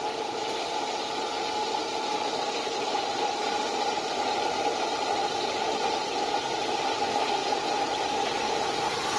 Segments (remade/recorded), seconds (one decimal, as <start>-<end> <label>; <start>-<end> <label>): 0.0-1.6 recorded; 1.6-6.9 remade; 6.9-9.2 recorded